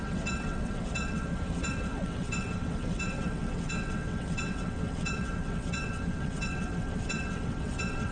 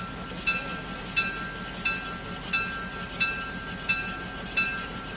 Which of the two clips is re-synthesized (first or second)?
first